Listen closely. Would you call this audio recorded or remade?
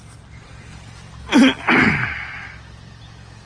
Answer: recorded